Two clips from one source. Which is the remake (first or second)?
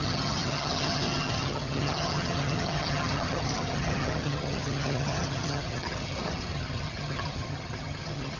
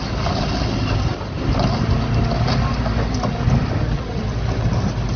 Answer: first